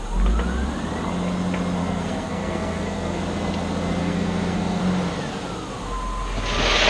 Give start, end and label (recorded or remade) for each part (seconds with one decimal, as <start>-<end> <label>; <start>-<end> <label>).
0.0-1.8 recorded; 1.8-3.2 remade; 3.2-4.0 recorded; 4.0-4.8 remade; 4.8-6.9 recorded